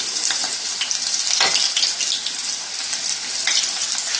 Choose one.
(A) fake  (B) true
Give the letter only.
B